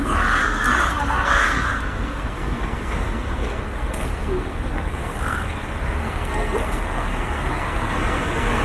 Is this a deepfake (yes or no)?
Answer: yes